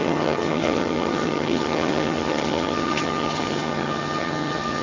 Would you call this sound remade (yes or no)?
yes